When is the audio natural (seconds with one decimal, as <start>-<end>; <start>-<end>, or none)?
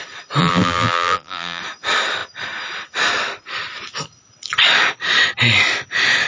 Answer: 0.0-0.4; 1.6-6.3